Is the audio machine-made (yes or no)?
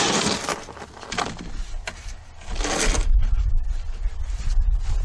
no